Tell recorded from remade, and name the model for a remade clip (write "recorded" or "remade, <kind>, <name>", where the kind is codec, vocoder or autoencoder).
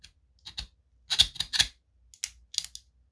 recorded